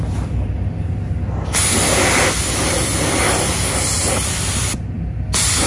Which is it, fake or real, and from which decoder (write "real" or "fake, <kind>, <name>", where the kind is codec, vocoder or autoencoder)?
real